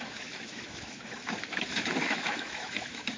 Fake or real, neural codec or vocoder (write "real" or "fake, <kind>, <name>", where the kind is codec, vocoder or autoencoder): fake, autoencoder, DAC-VAE